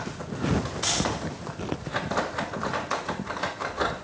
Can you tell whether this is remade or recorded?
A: recorded